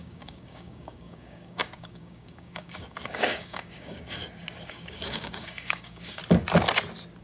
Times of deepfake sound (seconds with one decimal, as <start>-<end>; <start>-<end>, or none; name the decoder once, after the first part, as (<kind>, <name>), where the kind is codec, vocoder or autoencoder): 0.0-4.2 (codec, DAC); 4.7-6.2